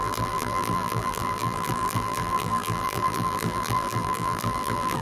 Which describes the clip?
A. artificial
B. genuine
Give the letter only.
A